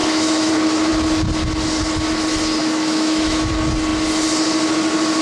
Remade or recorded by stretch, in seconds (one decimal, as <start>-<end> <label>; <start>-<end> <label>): 0.0-0.5 remade; 0.5-2.6 recorded; 2.6-3.5 remade; 3.5-5.2 recorded